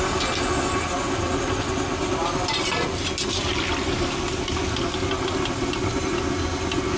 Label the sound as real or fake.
real